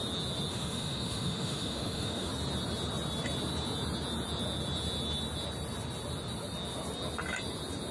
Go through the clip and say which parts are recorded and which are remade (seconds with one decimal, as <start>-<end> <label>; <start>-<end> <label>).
0.0-0.5 recorded; 0.5-2.3 remade; 2.3-7.9 recorded